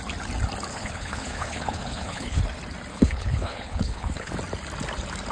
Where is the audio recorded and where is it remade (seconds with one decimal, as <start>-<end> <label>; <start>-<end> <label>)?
0.0-0.7 recorded; 0.7-2.4 remade; 2.4-2.9 recorded; 2.9-4.3 remade; 4.3-5.3 recorded